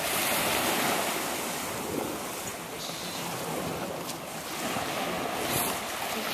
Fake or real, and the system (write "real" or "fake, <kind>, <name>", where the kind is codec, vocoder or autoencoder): real